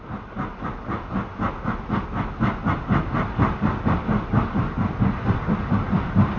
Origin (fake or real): real